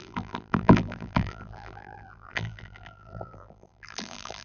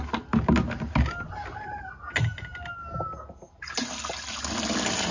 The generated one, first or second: first